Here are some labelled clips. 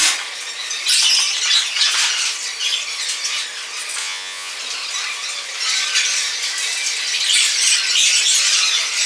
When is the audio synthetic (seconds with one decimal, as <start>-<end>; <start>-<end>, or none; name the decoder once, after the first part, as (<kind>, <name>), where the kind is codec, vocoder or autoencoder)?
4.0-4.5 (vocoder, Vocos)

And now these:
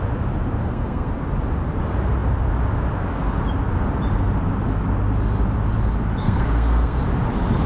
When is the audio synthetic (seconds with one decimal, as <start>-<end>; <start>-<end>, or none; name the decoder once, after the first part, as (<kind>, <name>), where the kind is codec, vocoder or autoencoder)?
0.6-1.1 (codec, SNAC); 6.2-7.0

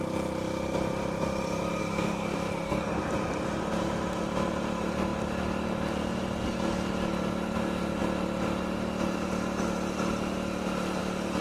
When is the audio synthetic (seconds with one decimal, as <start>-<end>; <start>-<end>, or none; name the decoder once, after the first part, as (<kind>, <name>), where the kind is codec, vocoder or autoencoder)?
1.8-3.0 (codec, SNAC)

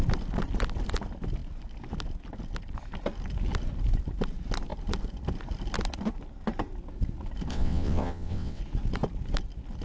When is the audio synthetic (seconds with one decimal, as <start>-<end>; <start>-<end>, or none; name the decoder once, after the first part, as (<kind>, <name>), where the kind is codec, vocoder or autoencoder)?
7.5-8.6 (vocoder, WaveNeXt)

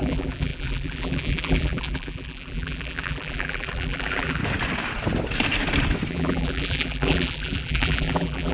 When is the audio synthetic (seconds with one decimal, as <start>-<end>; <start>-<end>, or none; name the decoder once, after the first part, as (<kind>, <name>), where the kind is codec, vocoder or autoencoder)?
0.0-4.4 (vocoder, BigVGAN v2); 6.1-8.5